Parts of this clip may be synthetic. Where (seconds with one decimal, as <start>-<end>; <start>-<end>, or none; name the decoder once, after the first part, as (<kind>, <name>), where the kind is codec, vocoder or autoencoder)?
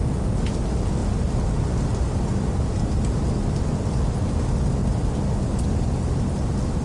none